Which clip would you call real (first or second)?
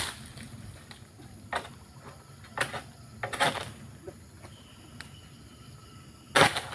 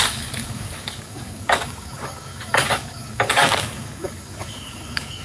first